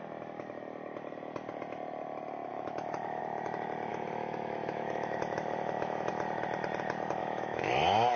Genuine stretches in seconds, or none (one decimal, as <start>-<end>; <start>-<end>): 0.0-2.5; 3.2-3.9; 6.1-7.2; 7.7-8.2